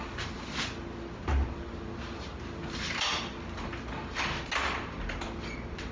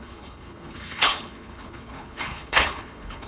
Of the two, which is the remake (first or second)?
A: second